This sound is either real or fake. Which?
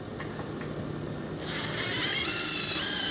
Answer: real